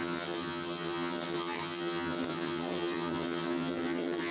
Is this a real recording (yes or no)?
no